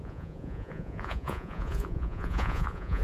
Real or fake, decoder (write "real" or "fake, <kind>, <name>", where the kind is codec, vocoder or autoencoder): fake, vocoder, Vocos